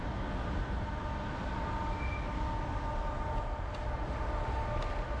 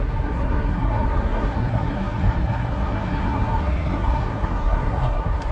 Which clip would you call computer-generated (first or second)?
second